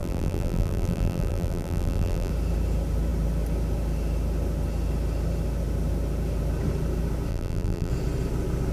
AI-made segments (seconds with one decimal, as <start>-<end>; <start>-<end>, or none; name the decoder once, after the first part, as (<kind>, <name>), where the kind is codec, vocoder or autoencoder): 0.0-2.3 (vocoder, BigVGAN v2); 7.3-7.9